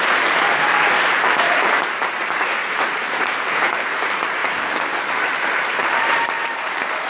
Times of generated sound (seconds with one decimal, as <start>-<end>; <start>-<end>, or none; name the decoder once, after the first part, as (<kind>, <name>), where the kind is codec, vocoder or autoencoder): 0.0-3.3 (vocoder, BigVGAN v2); 3.9-4.4; 5.9-7.1